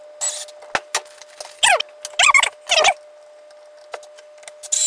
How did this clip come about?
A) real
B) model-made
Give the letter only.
A